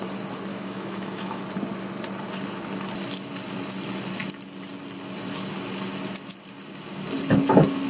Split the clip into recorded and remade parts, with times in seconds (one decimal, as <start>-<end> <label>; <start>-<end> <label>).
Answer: 0.0-0.5 recorded; 0.5-1.4 remade; 1.4-7.9 recorded